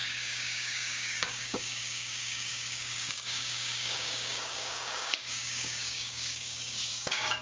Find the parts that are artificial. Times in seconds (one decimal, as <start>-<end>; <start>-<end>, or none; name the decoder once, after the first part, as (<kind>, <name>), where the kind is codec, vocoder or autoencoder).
0.0-7.4 (codec, DAC)

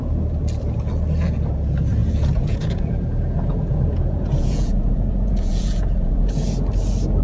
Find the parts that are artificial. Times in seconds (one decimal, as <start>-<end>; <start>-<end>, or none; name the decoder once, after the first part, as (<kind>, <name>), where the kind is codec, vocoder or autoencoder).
2.0-6.3 (vocoder, Vocos)

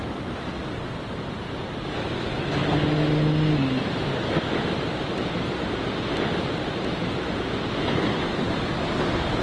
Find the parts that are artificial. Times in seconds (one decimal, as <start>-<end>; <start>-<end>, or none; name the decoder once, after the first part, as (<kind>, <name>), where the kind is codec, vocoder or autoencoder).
none

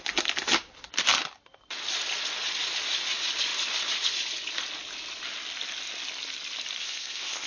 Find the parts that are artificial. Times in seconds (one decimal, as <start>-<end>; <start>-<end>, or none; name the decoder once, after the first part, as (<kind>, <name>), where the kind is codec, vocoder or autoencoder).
6.8-7.5 (codec, ZipCodec)